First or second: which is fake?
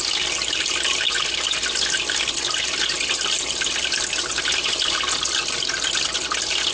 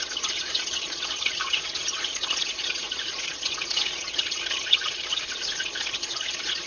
second